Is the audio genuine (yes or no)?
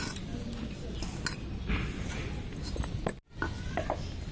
yes